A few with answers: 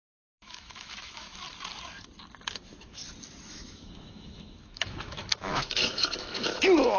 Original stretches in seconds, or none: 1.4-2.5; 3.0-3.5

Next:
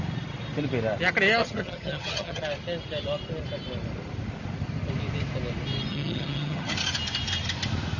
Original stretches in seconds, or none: 0.0-1.4; 2.4-5.9; 6.7-8.0

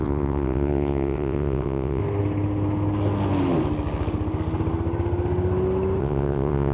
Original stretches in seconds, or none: 2.0-6.0